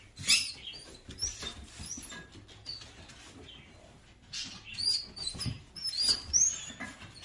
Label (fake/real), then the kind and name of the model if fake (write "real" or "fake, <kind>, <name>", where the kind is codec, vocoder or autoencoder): real